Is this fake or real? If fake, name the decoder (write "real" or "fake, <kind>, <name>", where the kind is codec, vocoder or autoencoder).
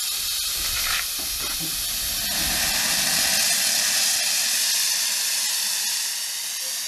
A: real